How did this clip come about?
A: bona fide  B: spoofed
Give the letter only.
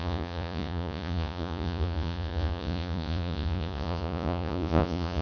B